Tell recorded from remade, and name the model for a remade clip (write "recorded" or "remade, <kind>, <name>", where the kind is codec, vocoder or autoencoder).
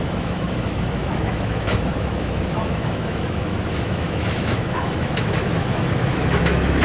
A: remade, autoencoder, DAC-VAE